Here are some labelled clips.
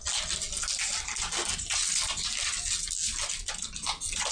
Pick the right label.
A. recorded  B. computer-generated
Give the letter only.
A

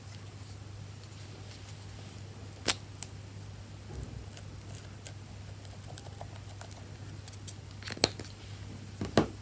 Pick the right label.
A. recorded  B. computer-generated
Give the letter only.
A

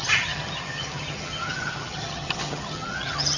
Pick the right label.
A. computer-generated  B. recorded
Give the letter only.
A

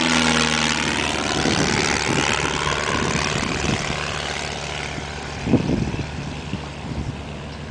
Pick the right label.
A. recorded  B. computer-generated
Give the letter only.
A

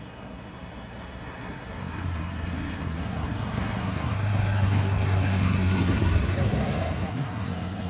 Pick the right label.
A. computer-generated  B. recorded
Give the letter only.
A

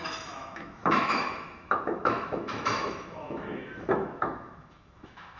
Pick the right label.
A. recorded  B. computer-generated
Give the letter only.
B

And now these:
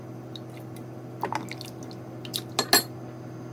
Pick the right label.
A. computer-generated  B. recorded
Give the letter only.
B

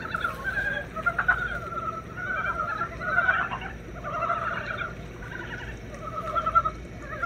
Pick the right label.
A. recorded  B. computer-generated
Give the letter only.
A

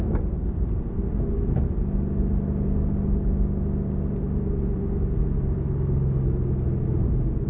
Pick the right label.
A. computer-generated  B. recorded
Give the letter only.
B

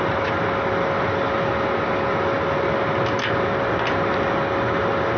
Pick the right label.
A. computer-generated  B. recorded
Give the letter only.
B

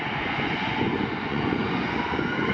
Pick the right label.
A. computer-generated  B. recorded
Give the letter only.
A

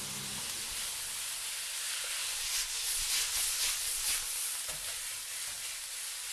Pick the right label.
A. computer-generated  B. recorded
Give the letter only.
B